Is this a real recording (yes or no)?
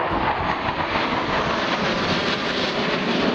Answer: yes